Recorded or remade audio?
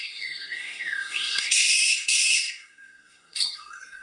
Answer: remade